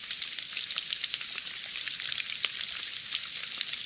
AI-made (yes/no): no